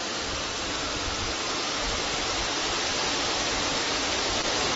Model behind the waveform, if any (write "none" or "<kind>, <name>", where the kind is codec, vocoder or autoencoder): vocoder, BigVGAN v2